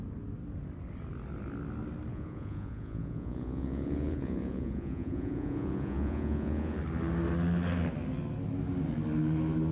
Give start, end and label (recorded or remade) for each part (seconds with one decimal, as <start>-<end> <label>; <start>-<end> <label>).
0.0-2.1 recorded; 2.1-6.8 remade; 6.8-9.7 recorded